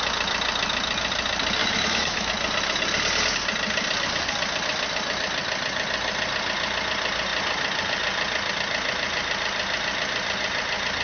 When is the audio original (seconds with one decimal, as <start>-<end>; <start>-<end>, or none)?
0.0-1.6; 2.3-11.0